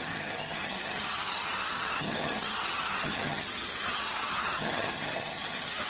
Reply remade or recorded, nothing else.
remade